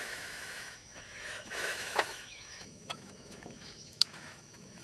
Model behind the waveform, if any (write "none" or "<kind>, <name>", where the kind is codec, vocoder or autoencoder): autoencoder, DAC-VAE